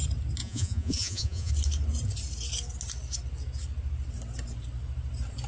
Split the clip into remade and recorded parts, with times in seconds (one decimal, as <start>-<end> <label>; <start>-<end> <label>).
0.0-0.4 recorded; 0.4-1.5 remade; 1.5-5.5 recorded